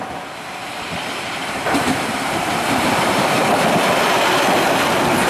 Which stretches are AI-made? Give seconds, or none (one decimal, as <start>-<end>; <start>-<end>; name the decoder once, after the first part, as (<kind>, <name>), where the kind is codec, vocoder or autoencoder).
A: 0.6-3.5 (vocoder, BigVGAN v2)